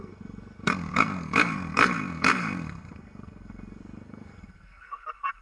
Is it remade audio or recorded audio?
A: remade